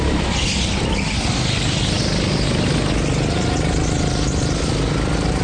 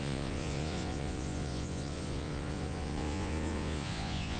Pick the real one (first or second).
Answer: first